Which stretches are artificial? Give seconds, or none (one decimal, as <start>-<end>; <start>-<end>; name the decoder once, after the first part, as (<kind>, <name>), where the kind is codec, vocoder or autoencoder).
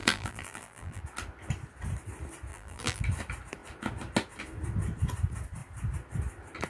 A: 0.0-1.0 (vocoder, BigVGAN v2); 2.5-3.0